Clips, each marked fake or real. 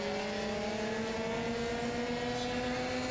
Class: real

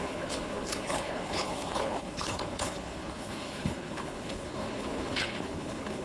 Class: fake